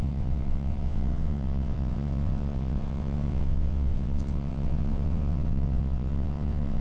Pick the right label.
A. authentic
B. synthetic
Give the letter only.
B